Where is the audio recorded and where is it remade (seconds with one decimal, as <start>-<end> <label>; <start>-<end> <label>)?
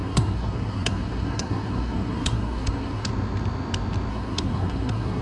0.0-3.1 remade; 3.1-4.1 recorded; 4.1-5.2 remade